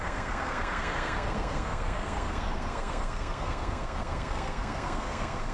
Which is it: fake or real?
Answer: fake